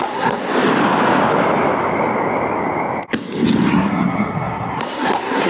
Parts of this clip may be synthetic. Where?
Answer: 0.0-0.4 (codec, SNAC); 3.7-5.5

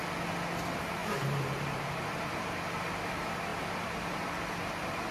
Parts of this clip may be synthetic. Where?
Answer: 1.0-2.7 (vocoder, BigVGAN v2); 3.5-4.5

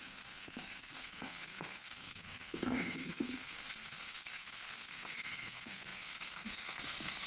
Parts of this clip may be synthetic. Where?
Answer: 0.0-7.3 (codec, SNAC)